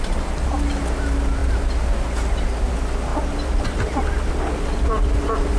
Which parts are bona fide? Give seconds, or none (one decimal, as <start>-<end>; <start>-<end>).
0.0-5.6